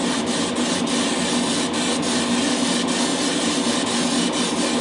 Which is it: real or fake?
real